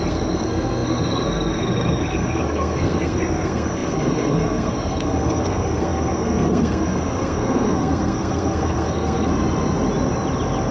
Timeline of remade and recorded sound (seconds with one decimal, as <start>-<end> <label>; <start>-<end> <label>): 0.0-9.3 remade; 9.3-10.7 recorded